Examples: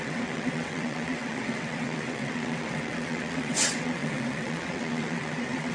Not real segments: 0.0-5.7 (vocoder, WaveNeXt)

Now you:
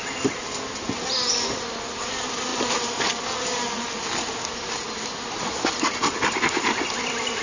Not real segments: none

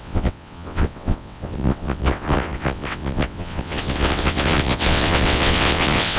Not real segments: 0.0-6.2 (vocoder, WaveNeXt)

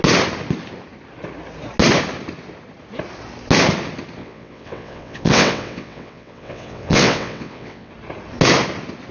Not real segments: 4.2-7.9 (vocoder, WaveNeXt)

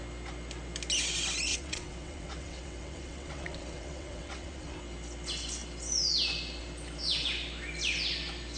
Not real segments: 1.5-4.8 (vocoder, WaveNeXt)

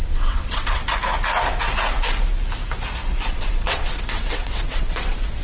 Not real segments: 0.0-0.8 (vocoder, WaveNeXt); 3.3-5.4

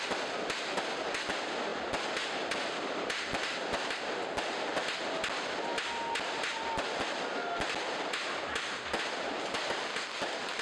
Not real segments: none

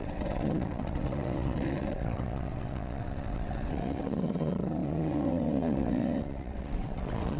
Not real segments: 0.0-7.4 (vocoder, WaveNeXt)